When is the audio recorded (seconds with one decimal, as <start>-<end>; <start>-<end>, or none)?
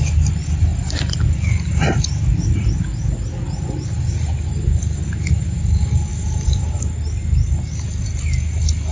0.0-0.7; 1.7-6.1; 6.8-8.9